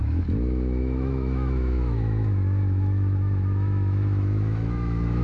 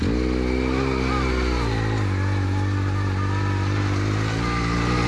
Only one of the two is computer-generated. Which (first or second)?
first